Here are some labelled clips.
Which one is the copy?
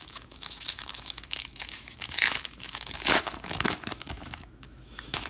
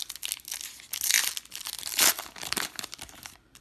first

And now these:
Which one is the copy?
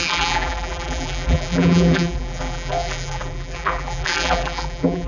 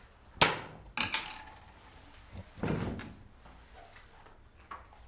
first